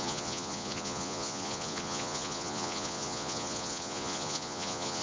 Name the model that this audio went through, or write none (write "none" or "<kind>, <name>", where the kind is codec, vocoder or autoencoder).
vocoder, Vocos